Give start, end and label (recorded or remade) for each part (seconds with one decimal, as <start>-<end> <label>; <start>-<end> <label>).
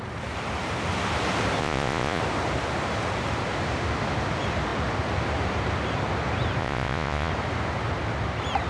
0.0-1.6 recorded; 1.6-2.2 remade; 2.2-6.6 recorded; 6.6-7.3 remade; 7.3-8.7 recorded